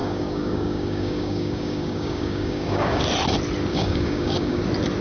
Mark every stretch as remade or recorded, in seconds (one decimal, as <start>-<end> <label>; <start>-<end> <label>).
0.0-3.0 remade; 3.0-3.7 recorded; 3.7-4.6 remade; 4.6-5.0 recorded